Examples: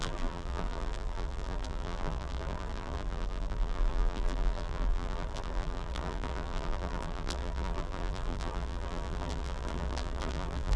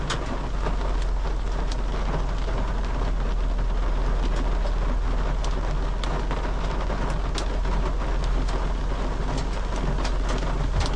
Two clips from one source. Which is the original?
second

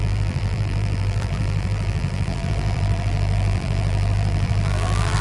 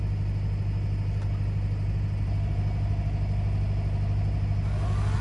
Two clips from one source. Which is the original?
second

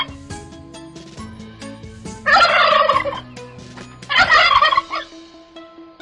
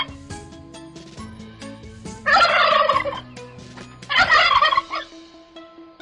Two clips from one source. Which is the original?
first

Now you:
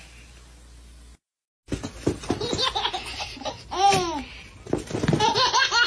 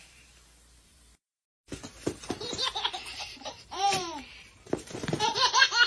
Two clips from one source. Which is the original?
first